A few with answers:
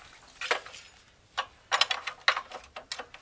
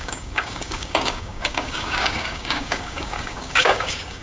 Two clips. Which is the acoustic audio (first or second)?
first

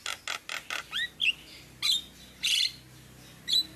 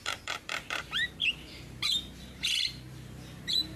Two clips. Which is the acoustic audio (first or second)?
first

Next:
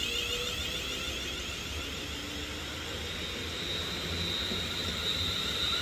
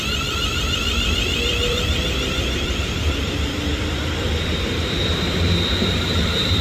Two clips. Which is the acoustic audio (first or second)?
first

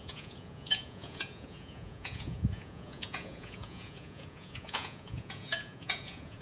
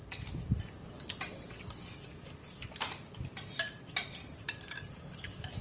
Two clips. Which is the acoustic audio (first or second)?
second